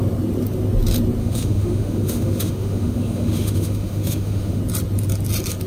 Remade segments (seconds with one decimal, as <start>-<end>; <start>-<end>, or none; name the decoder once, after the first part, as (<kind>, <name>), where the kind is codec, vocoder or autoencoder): 1.2-4.6 (autoencoder, DAC-VAE)